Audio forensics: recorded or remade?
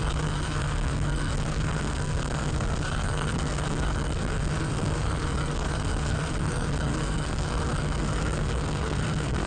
remade